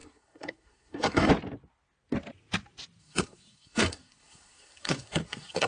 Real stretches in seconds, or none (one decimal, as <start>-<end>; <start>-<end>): 1.3-3.0